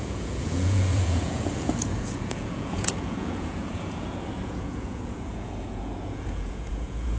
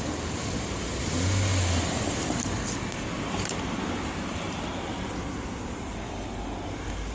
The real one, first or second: second